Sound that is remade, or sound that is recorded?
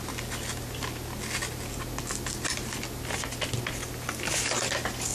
recorded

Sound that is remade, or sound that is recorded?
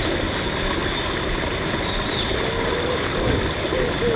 recorded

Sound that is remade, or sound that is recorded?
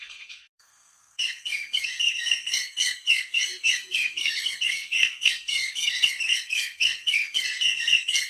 remade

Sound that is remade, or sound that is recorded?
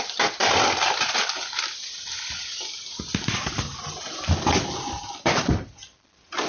recorded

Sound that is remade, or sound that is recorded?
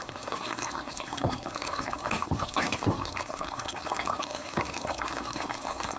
remade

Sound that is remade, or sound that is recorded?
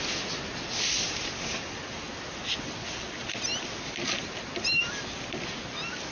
recorded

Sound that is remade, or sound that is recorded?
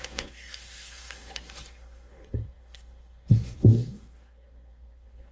remade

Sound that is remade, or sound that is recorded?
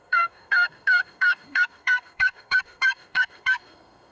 remade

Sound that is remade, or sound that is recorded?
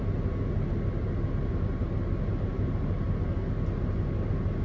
recorded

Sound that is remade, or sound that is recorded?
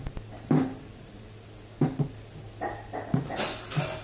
recorded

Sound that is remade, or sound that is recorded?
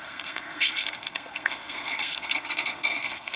remade